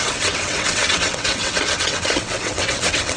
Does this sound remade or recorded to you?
remade